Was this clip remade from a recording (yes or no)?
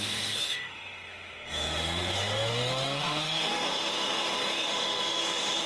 yes